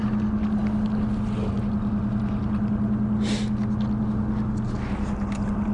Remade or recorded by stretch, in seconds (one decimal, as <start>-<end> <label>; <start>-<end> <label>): 0.0-5.7 recorded